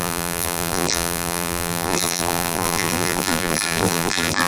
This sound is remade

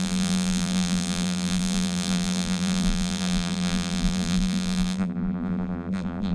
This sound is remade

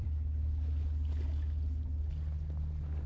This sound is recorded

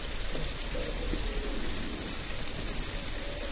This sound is recorded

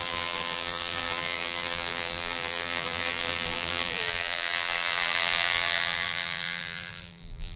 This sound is remade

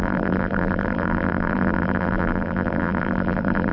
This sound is remade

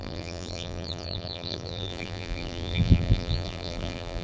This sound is remade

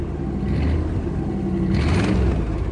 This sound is recorded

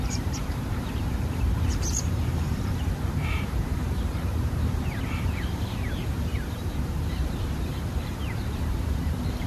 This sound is remade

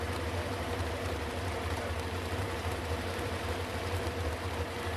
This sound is remade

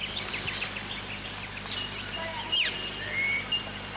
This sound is recorded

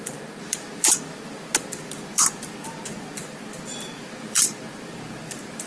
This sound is remade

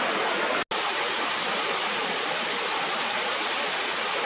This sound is recorded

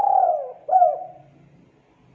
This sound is recorded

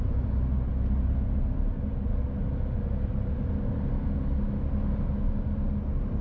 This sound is recorded